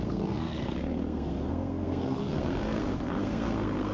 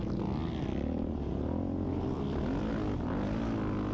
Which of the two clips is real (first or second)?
second